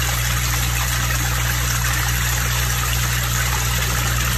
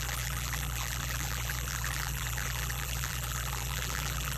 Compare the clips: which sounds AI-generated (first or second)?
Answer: second